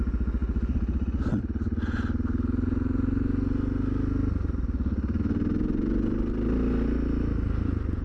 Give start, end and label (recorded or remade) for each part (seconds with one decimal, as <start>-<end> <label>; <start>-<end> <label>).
0.0-8.0 recorded

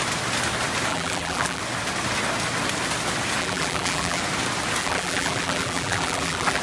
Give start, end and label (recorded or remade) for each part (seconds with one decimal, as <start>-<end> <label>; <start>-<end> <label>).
0.0-0.9 recorded; 0.9-1.6 remade; 1.6-3.4 recorded; 3.4-4.2 remade; 4.2-4.8 recorded; 4.8-6.6 remade

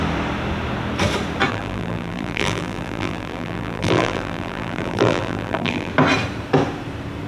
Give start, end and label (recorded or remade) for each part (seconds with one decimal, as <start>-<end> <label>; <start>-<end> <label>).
0.0-1.5 recorded; 1.5-5.9 remade; 5.9-7.3 recorded

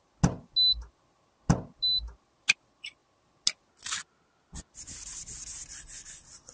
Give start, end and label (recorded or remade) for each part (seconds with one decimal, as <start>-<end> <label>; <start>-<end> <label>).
0.0-6.5 recorded

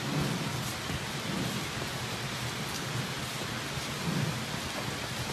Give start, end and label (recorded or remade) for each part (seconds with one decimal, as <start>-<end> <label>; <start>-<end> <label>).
0.0-0.7 recorded; 0.7-3.9 remade; 3.9-5.3 recorded

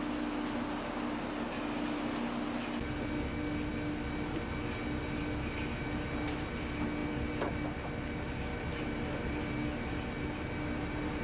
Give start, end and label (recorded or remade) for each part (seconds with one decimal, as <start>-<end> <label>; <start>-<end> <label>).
0.0-11.2 recorded

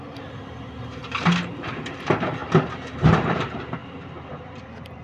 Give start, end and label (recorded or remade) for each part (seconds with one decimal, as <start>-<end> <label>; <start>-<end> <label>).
0.0-5.0 remade

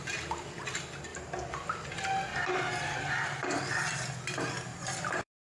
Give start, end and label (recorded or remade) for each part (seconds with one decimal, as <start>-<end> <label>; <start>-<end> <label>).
0.0-2.3 recorded; 2.3-4.1 remade; 4.1-4.7 recorded; 4.7-5.4 remade